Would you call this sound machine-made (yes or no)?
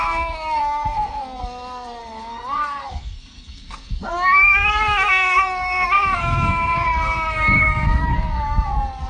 yes